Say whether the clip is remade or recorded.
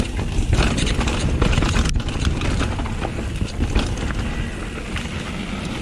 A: recorded